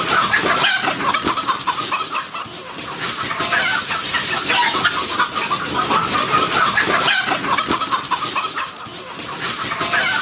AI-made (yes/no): no